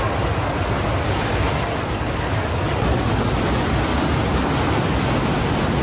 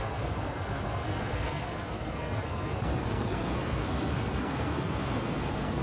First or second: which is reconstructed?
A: second